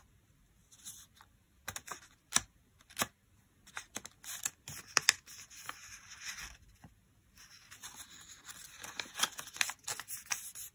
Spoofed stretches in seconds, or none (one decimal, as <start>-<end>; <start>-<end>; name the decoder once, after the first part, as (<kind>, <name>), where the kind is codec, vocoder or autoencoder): 0.6-2.3 (vocoder, BigVGAN v2)